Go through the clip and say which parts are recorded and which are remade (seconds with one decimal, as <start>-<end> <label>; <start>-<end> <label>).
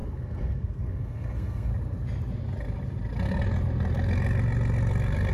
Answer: 0.0-1.7 remade; 1.7-5.3 recorded